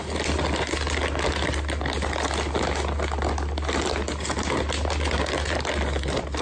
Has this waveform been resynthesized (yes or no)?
no